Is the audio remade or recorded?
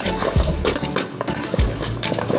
remade